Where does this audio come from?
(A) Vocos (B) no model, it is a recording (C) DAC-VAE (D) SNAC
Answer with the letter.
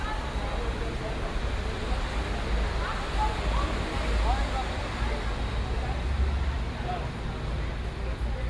B